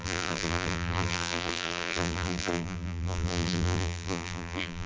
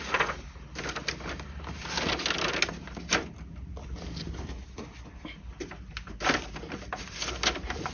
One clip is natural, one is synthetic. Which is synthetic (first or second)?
first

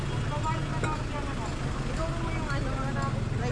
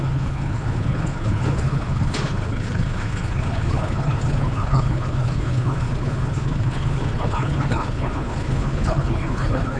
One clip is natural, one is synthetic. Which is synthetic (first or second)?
second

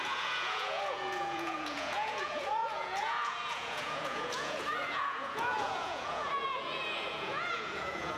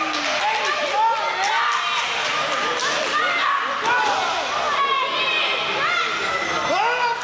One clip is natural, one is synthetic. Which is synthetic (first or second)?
first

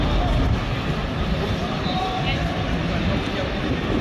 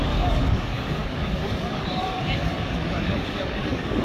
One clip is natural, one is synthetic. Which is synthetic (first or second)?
second